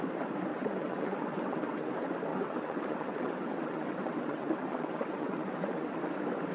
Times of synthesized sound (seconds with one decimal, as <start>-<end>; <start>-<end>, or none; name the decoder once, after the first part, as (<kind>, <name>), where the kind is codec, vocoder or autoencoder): 0.5-1.9 (vocoder, WaveNeXt); 2.3-6.0